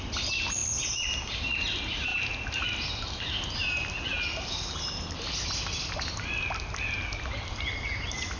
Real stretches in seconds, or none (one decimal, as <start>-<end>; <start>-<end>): 0.0-8.4